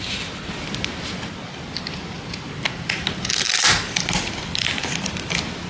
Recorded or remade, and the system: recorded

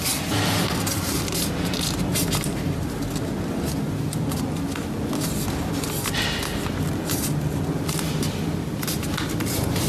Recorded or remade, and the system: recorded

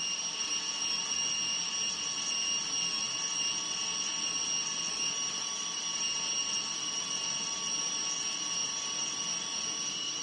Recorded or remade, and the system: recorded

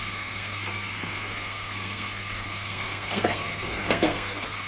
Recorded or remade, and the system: remade, codec, SNAC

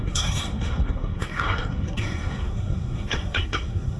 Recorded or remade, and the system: remade, codec, SNAC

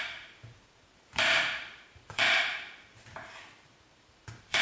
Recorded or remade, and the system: remade, vocoder, BigVGAN v2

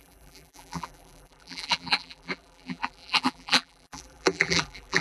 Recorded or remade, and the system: remade, vocoder, BigVGAN v2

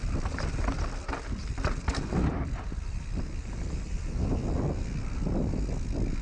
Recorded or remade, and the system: recorded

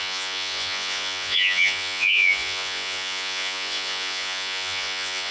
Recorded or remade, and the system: remade, vocoder, Vocos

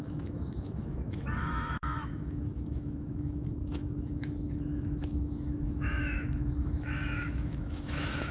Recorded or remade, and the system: remade, autoencoder, DAC-VAE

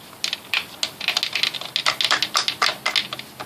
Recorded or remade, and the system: recorded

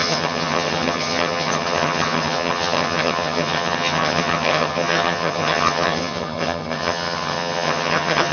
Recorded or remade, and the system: remade, vocoder, HiFi-GAN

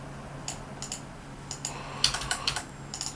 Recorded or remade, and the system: recorded